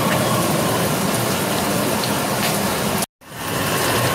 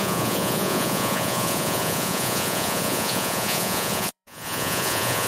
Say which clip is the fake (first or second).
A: second